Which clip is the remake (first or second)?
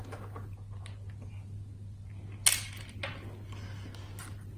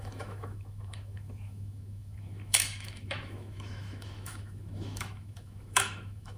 second